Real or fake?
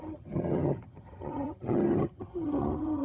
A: fake